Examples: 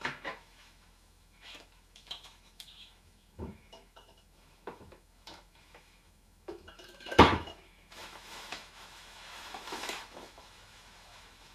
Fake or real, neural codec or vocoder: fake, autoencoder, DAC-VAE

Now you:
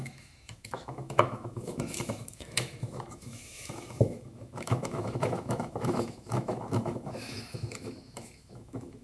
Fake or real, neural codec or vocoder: fake, autoencoder, DAC-VAE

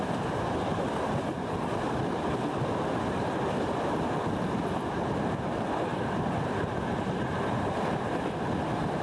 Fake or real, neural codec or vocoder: real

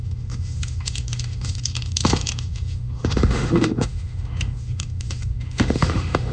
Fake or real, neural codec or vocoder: fake, autoencoder, DAC-VAE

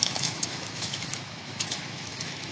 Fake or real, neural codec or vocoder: fake, autoencoder, DAC-VAE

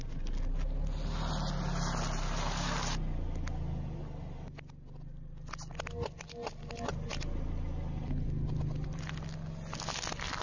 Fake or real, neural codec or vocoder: real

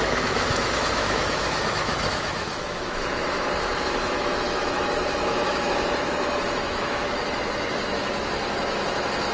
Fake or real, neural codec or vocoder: fake, autoencoder, DAC-VAE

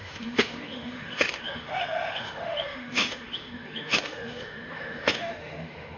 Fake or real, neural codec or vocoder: fake, autoencoder, DAC-VAE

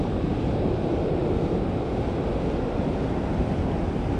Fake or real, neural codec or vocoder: real